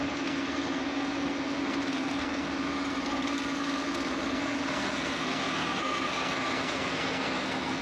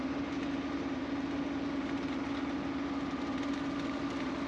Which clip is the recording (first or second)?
second